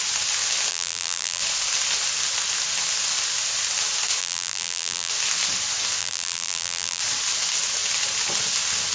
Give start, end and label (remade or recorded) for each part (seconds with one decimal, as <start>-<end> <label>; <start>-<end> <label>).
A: 0.0-0.7 recorded; 0.7-1.4 remade; 1.4-4.2 recorded; 4.2-5.1 remade; 5.1-6.0 recorded; 6.0-7.0 remade; 7.0-8.9 recorded